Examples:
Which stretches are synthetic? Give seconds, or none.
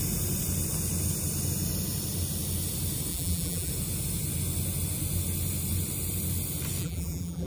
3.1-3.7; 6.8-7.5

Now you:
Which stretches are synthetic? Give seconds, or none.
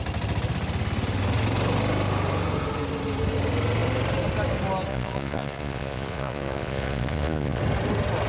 4.9-7.6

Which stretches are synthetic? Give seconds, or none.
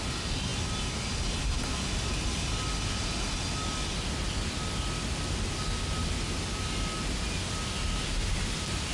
6.5-7.3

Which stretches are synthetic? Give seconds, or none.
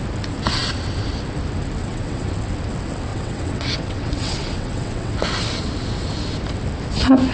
1.8-2.3; 3.1-5.1